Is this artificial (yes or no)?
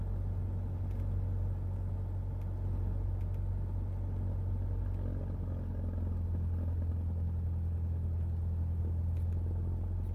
no